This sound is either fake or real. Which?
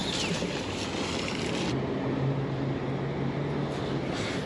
real